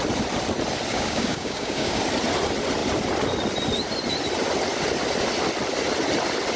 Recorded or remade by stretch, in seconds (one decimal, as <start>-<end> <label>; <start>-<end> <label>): 0.0-0.9 recorded; 0.9-2.0 remade; 2.0-6.6 recorded